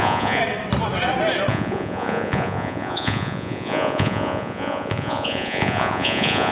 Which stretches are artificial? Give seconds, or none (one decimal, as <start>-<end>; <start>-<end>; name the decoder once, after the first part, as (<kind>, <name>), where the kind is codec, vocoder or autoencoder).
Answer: 0.0-0.4 (vocoder, Vocos); 1.5-6.5